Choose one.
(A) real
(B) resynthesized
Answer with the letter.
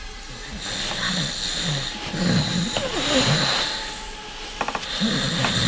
A